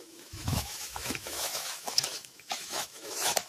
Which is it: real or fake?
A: fake